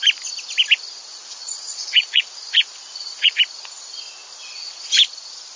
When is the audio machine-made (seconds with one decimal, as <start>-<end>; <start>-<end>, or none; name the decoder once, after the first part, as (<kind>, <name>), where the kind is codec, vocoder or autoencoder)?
1.1-3.4 (vocoder, Vocos)